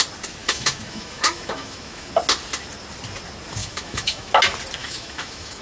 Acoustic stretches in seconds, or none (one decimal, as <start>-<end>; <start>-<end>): 0.0-0.4; 2.1-3.6; 4.3-4.8